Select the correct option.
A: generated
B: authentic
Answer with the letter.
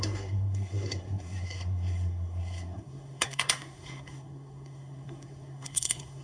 A